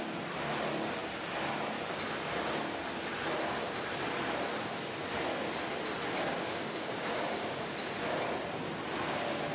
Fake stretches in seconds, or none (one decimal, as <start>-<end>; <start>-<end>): 6.3-7.7